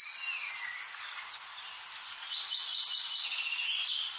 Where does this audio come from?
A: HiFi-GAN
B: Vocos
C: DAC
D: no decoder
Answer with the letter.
D